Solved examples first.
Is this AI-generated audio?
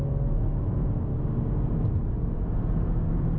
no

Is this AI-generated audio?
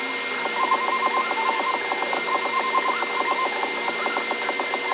no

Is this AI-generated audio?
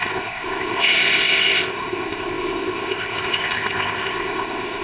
yes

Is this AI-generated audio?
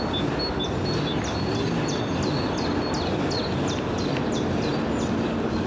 no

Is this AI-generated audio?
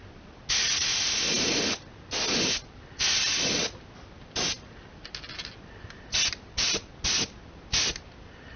no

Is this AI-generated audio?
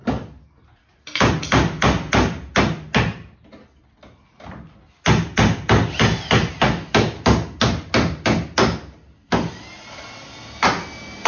no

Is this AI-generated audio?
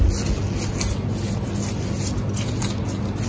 no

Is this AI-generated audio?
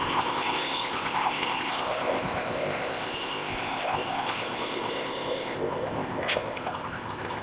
yes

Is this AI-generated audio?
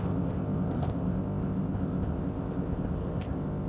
yes